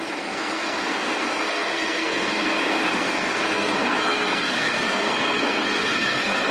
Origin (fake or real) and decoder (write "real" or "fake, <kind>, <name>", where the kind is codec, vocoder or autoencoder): fake, codec, SNAC